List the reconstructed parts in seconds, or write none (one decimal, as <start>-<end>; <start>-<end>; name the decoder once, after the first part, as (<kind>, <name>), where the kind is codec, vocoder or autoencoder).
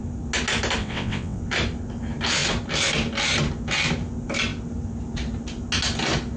0.8-1.4 (vocoder, WaveNeXt)